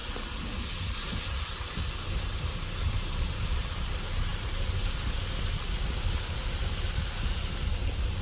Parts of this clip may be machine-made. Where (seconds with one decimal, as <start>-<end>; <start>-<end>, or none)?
none